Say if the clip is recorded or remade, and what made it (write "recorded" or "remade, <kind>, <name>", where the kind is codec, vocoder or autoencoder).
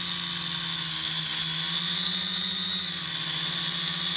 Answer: recorded